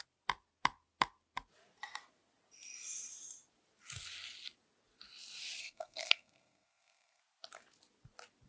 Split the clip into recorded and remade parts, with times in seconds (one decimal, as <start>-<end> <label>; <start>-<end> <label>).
0.0-5.6 recorded; 5.6-7.2 remade; 7.2-8.5 recorded